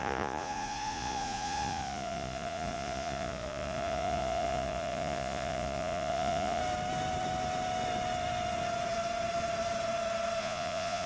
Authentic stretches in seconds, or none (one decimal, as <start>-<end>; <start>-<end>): 6.6-10.4